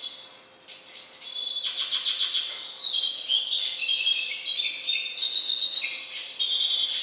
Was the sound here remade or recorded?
recorded